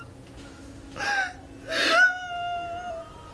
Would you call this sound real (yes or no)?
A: yes